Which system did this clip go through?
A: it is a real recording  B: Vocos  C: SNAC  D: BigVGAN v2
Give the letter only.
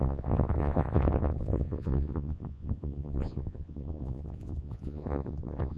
B